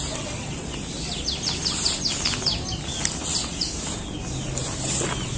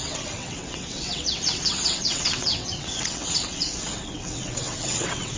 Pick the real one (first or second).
first